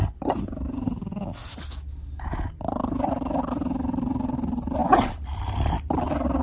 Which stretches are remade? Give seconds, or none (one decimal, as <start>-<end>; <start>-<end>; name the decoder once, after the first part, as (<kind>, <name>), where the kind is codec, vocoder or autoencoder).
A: none

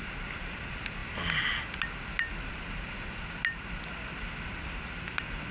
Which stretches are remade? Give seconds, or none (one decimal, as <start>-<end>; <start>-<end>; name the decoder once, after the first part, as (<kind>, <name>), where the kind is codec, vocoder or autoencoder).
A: none

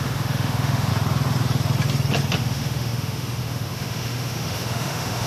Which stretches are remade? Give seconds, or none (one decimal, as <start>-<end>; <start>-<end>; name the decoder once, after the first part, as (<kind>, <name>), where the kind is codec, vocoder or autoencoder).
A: 0.0-0.9 (autoencoder, DAC-VAE); 2.4-5.3